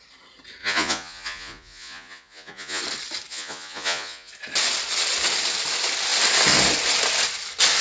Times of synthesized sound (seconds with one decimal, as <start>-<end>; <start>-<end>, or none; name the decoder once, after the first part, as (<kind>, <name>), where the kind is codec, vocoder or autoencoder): 0.6-2.8 (vocoder, Vocos); 3.3-4.3